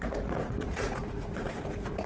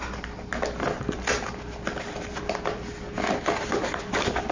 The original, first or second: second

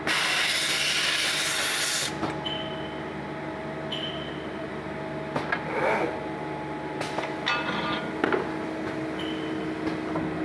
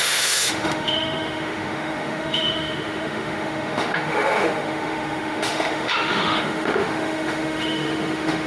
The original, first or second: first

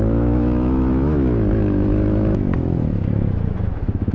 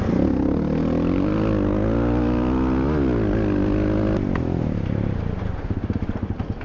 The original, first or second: second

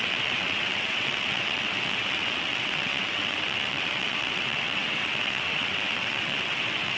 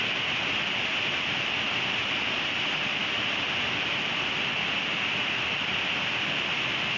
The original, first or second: second